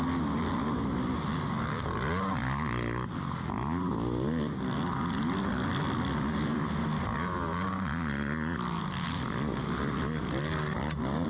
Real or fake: real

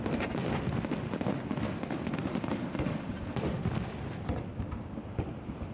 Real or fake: real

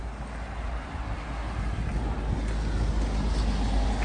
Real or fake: real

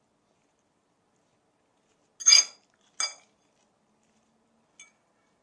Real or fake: real